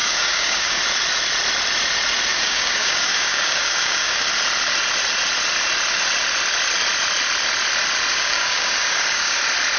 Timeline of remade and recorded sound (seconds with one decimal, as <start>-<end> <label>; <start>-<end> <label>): 0.0-0.8 remade; 0.8-2.3 recorded; 2.3-4.3 remade; 4.3-8.1 recorded; 8.1-9.4 remade; 9.4-9.8 recorded